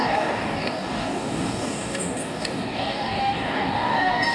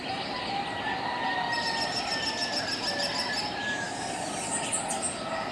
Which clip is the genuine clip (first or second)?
second